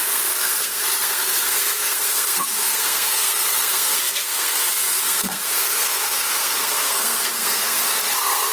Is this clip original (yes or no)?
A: no